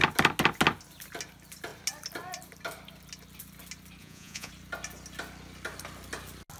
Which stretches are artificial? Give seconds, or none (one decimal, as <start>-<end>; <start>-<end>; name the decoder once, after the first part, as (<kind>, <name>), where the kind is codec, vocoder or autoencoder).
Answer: 4.0-4.5 (vocoder, Vocos)